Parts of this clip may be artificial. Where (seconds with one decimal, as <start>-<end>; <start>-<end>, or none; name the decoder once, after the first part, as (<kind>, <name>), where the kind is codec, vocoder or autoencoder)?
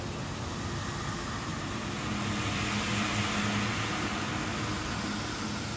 none